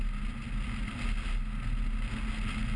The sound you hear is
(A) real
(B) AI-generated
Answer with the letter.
A